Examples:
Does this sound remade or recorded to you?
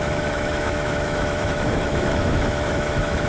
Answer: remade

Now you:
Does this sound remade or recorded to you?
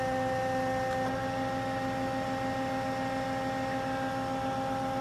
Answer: recorded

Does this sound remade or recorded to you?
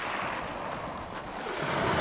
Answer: recorded